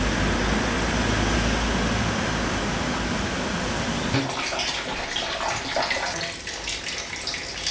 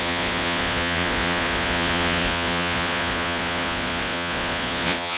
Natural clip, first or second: first